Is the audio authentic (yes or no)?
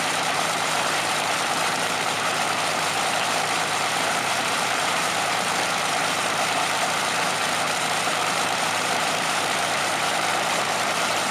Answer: no